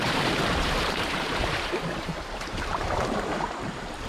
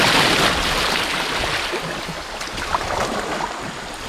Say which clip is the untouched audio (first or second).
second